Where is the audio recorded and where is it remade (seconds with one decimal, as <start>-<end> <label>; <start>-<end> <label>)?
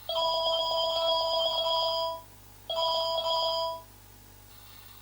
0.0-1.5 remade; 1.5-4.5 recorded; 4.5-5.0 remade